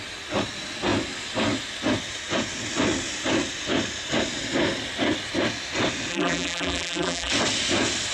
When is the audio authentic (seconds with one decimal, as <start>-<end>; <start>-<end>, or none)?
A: 0.0-6.1; 7.3-8.1